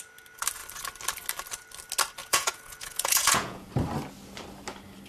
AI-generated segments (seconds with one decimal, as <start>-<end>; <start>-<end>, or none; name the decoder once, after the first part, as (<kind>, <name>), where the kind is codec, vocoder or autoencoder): 2.2-3.7 (vocoder, Vocos)

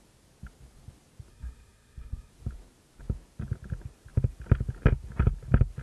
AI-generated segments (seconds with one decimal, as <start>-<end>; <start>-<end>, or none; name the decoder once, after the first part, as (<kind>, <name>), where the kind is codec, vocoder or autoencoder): 1.3-2.3 (codec, SNAC)